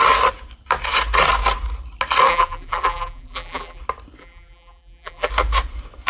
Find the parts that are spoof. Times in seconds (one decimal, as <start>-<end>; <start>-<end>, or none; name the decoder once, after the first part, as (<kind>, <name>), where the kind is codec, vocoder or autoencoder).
2.3-3.8 (vocoder, BigVGAN v2); 4.2-5.3